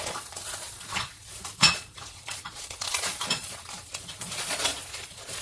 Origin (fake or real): fake